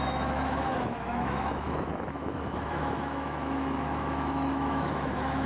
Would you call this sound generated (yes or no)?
yes